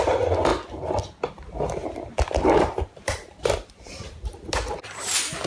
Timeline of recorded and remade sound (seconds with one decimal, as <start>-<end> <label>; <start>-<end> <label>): 0.0-1.8 recorded; 1.8-5.1 remade; 5.1-5.5 recorded